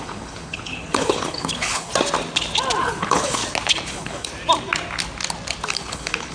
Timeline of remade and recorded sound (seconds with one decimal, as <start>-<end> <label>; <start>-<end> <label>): 0.0-1.9 remade; 1.9-2.8 recorded; 2.8-3.4 remade; 3.4-3.9 recorded; 3.9-4.3 remade; 4.3-5.7 recorded; 5.7-6.3 remade